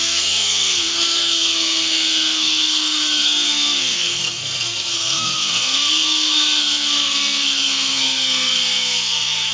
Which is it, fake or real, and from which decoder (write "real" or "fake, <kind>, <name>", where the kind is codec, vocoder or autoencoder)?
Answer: fake, codec, SNAC